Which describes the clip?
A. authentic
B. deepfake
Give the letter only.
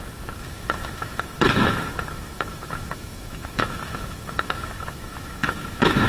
B